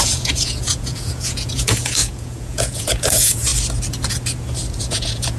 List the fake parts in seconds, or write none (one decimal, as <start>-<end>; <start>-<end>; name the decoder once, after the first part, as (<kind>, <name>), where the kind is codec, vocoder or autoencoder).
0.0-3.5 (vocoder, Vocos); 4.8-5.4